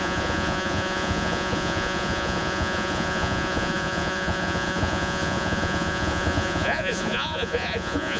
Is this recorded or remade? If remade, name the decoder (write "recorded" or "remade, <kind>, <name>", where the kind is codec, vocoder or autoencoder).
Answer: remade, vocoder, Vocos